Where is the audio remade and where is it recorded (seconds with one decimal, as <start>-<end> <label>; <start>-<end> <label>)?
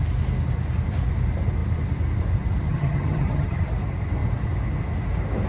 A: 0.0-2.7 recorded; 2.7-3.7 remade; 3.7-5.5 recorded